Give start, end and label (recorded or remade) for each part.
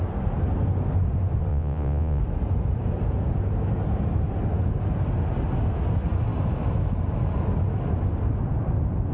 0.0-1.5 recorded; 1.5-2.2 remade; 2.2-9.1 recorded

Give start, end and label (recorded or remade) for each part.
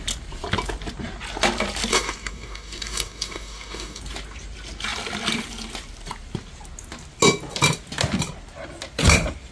0.0-1.9 recorded; 1.9-4.0 remade; 4.0-9.5 recorded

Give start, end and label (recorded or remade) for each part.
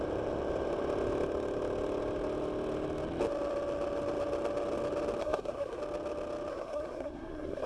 0.0-5.2 recorded; 5.2-5.8 remade; 5.8-6.5 recorded; 6.5-7.7 remade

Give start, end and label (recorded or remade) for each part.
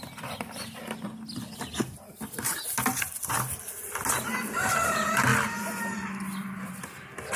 0.0-7.4 recorded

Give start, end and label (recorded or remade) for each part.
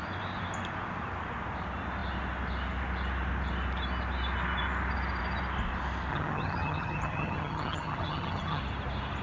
0.0-6.1 recorded; 6.1-8.6 remade; 8.6-9.2 recorded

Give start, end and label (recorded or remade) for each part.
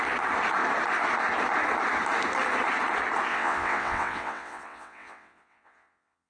0.0-3.3 recorded; 3.3-6.3 remade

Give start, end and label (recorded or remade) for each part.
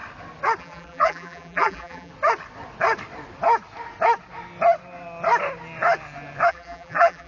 0.0-0.6 recorded; 0.6-2.1 remade; 2.1-6.5 recorded; 6.5-7.3 remade